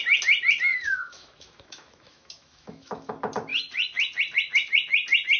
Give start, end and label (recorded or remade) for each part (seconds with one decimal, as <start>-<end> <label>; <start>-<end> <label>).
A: 0.0-0.7 recorded; 0.7-3.1 remade; 3.1-5.4 recorded